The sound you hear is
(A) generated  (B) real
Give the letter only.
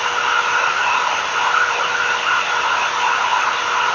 B